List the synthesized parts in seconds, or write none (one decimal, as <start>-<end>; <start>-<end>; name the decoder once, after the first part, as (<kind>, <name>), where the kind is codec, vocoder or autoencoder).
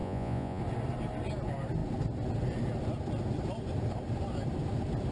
0.0-0.6 (vocoder, Vocos)